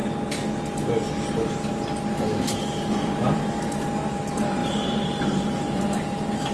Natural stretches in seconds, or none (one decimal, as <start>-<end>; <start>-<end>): 0.0-6.5